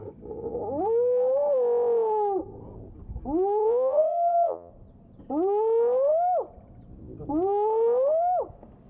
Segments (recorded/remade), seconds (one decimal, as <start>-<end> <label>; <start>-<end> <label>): 0.0-3.6 recorded; 3.6-4.7 remade; 4.7-8.9 recorded